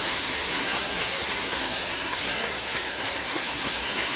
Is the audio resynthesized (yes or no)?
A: yes